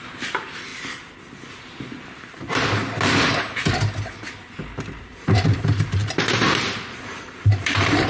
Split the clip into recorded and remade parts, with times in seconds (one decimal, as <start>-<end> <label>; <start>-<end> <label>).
0.0-0.7 remade; 0.7-5.0 recorded; 5.0-8.1 remade